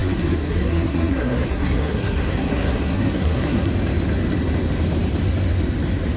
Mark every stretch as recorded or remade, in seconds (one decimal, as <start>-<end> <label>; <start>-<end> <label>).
0.0-3.7 remade; 3.7-6.2 recorded